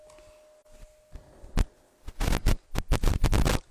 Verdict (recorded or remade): recorded